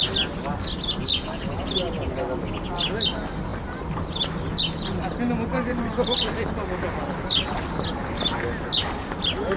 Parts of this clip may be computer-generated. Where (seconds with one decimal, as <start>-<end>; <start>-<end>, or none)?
none